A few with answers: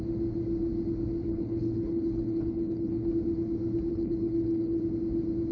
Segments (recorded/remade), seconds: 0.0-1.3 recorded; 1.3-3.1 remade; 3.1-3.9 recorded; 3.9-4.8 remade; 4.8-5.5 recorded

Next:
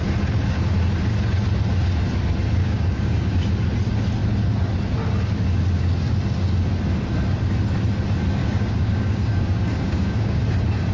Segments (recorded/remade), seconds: 0.0-2.6 recorded; 2.6-3.3 remade; 3.3-8.4 recorded; 8.4-10.4 remade; 10.4-10.9 recorded

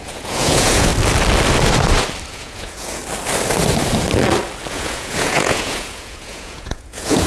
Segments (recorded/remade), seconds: 0.0-0.9 remade; 0.9-2.3 recorded; 2.3-3.0 remade; 3.0-4.7 recorded; 4.7-7.3 remade